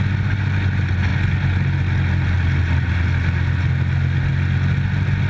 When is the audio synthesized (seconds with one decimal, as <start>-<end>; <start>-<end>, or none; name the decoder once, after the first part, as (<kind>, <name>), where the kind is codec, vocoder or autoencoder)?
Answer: none